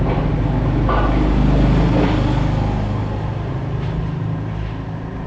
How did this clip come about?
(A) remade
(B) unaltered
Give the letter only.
B